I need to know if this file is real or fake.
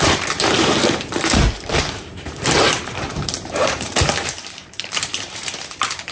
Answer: fake